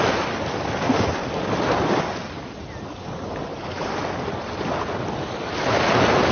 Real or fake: real